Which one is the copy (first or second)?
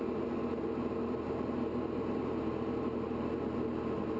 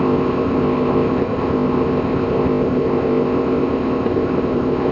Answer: second